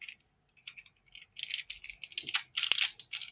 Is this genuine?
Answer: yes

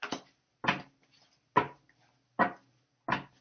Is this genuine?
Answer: yes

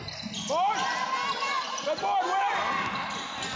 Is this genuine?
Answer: yes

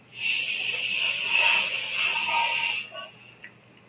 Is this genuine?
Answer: yes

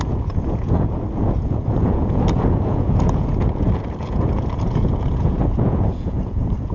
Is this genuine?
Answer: no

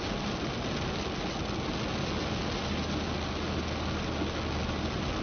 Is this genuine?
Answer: yes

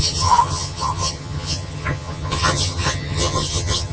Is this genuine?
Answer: no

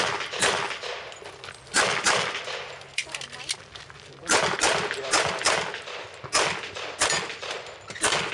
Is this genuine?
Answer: yes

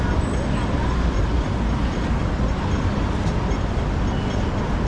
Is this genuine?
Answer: yes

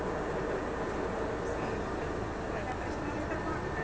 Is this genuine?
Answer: yes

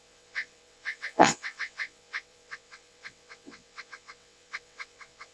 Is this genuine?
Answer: no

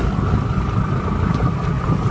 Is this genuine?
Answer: no